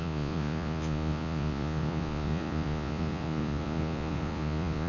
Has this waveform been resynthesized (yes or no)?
yes